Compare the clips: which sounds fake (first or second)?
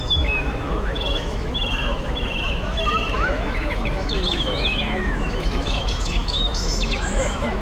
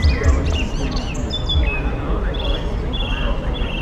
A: first